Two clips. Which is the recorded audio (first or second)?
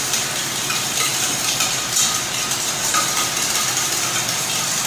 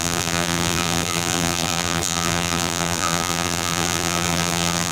first